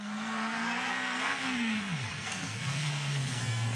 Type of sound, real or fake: fake